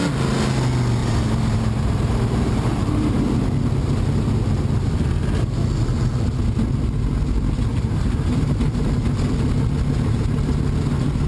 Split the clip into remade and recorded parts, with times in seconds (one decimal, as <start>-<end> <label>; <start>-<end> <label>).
0.0-1.0 recorded; 1.0-3.1 remade; 3.1-7.7 recorded; 7.7-8.8 remade; 8.8-11.3 recorded